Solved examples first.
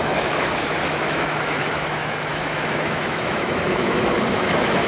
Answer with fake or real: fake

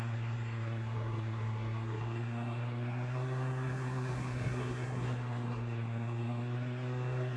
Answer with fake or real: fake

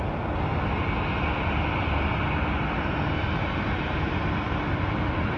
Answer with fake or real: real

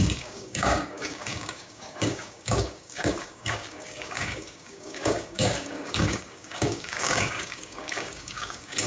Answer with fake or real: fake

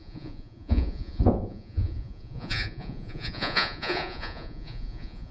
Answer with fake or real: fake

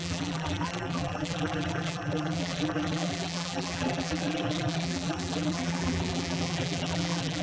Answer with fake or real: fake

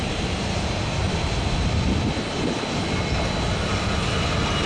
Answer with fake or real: real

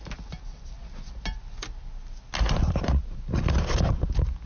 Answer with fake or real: real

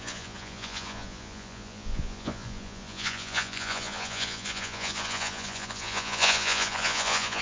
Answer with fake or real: fake